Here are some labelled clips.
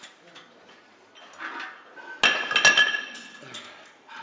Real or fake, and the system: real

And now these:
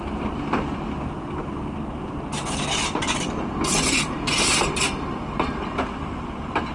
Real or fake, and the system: real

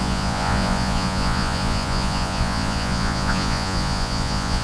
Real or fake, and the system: fake, vocoder, Vocos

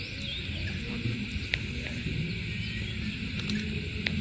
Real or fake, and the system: real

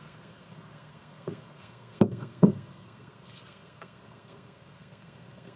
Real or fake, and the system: fake, codec, SNAC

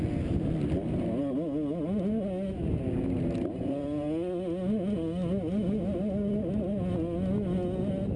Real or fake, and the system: real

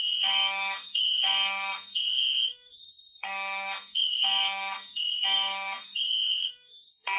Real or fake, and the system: fake, codec, SNAC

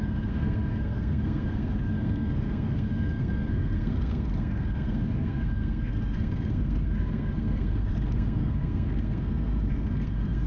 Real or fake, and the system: fake, codec, SNAC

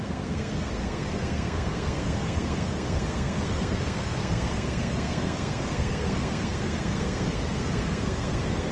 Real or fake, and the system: fake, codec, SNAC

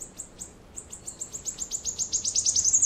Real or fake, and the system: real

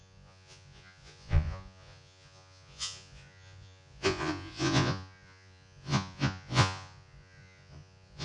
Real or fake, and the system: fake, vocoder, Vocos